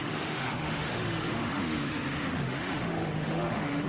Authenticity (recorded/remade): remade